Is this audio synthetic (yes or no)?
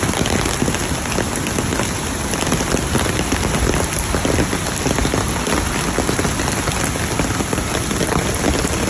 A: no